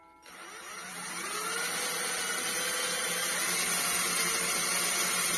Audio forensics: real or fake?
real